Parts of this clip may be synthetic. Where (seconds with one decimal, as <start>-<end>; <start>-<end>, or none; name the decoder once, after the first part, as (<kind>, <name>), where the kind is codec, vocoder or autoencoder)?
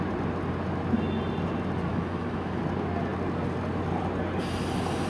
1.9-2.6 (autoencoder, DAC-VAE)